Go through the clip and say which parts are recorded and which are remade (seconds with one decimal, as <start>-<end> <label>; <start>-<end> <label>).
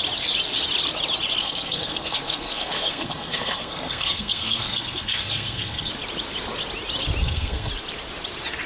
0.0-1.4 recorded; 1.4-5.9 remade; 5.9-7.2 recorded; 7.2-7.7 remade; 7.7-8.7 recorded